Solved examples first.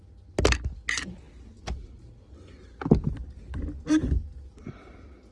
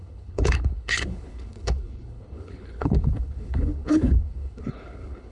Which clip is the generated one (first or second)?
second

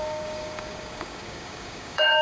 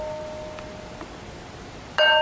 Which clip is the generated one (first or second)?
first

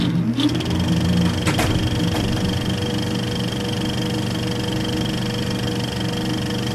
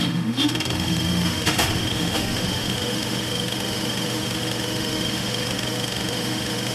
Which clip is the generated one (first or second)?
second